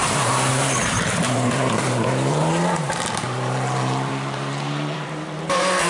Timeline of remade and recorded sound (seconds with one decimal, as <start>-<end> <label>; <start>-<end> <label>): 0.0-5.9 remade